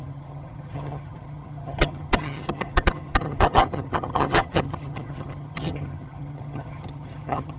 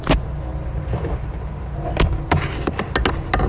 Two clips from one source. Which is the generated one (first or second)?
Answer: first